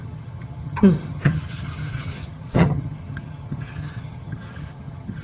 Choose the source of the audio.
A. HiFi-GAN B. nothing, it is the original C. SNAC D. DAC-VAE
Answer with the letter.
A